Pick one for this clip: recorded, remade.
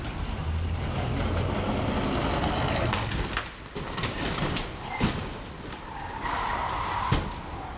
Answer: recorded